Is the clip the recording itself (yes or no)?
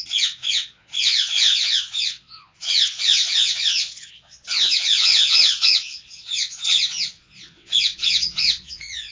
no